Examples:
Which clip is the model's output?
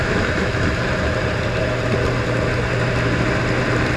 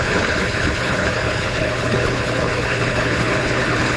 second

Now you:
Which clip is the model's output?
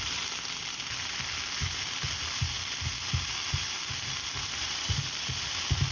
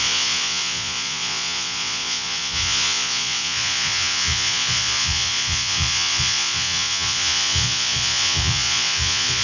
second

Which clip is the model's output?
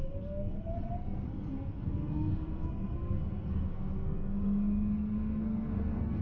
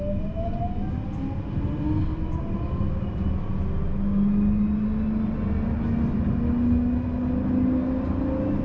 first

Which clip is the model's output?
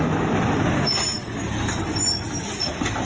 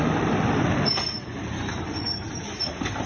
second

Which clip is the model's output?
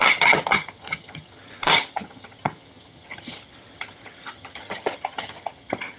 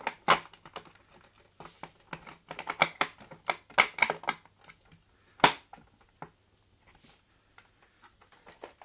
first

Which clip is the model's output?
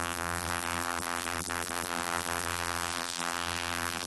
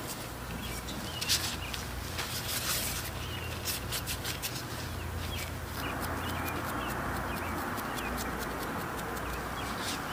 first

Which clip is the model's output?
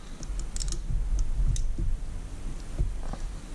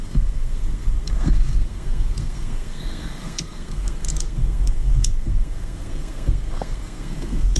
second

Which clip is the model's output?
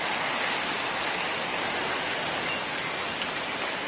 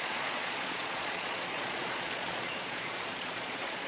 second